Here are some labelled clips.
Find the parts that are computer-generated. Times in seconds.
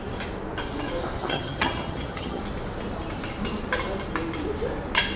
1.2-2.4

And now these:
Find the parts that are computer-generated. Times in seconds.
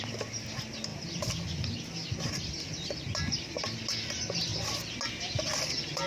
none